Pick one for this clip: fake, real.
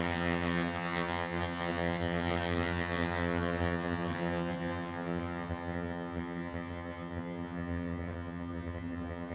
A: fake